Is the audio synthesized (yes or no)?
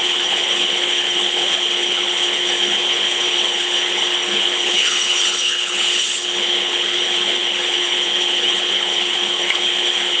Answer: yes